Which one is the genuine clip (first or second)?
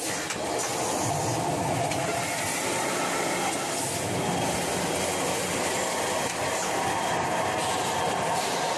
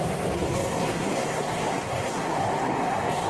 first